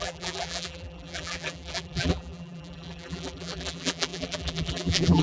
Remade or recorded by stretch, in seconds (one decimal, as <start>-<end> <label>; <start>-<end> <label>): 0.0-5.2 remade